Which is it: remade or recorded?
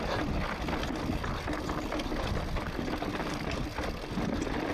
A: recorded